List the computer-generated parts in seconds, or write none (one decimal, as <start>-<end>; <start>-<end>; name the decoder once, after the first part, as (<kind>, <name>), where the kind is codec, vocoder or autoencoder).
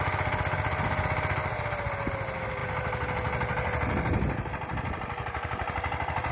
none